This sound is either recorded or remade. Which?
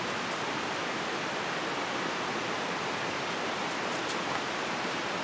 recorded